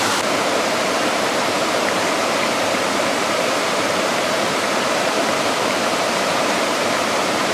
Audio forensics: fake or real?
fake